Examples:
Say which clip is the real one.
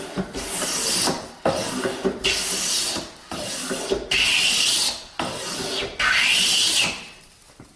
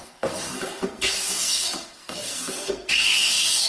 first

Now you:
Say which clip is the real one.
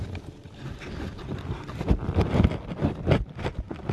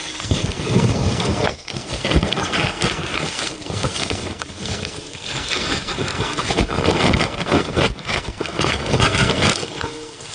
first